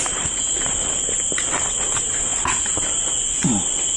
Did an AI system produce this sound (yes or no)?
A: no